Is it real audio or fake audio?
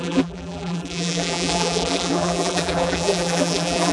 fake